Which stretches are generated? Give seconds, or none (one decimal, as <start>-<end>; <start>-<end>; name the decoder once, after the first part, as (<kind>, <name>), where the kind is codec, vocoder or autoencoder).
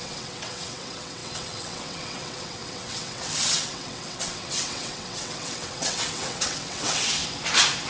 0.0-7.2 (vocoder, WaveNeXt)